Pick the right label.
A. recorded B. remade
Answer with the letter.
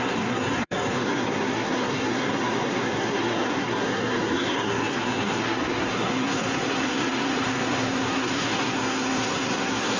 B